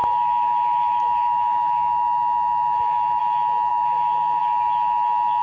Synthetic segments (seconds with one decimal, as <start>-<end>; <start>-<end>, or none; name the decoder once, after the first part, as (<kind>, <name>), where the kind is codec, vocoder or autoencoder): 0.0-3.2 (autoencoder, DAC-VAE); 3.7-4.4